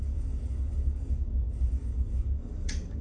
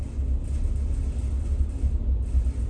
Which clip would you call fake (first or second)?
first